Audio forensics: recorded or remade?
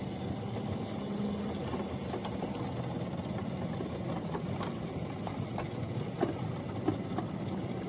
recorded